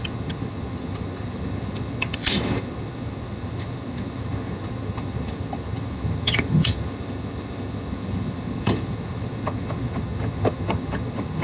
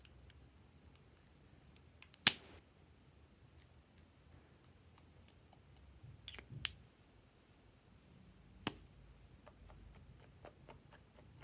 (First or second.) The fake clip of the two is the first